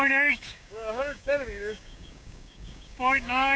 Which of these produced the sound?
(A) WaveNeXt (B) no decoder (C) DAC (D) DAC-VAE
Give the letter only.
C